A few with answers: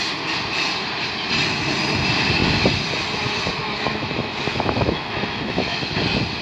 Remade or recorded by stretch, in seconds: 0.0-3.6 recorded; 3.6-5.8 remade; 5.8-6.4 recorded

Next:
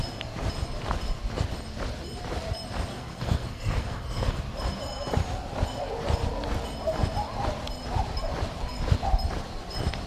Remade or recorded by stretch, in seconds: 0.0-2.9 recorded; 2.9-4.4 remade; 4.4-10.1 recorded

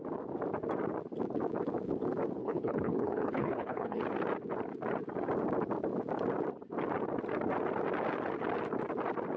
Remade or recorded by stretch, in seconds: 0.0-2.4 recorded; 2.4-4.0 remade; 4.0-9.4 recorded

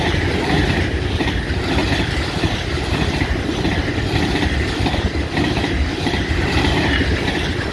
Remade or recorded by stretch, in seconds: 0.0-1.8 remade; 1.8-6.0 recorded; 6.0-7.7 remade

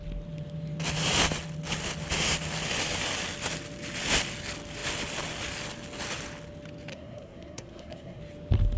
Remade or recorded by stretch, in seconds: 0.0-6.9 recorded; 6.9-8.2 remade; 8.2-8.8 recorded

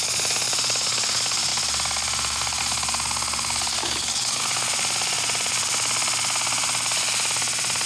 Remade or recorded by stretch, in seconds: 0.0-3.8 recorded; 3.8-4.4 remade; 4.4-7.9 recorded